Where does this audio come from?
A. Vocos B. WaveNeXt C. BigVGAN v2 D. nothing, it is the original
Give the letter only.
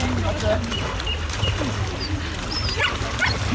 D